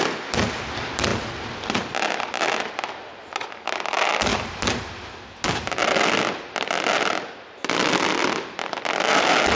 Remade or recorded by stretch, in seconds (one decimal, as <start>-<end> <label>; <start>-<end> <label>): 0.0-9.6 recorded